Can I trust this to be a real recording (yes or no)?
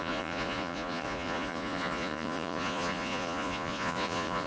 no